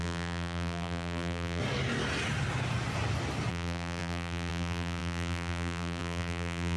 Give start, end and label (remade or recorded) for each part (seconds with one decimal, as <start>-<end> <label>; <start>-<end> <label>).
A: 0.0-1.6 remade; 1.6-3.5 recorded; 3.5-6.8 remade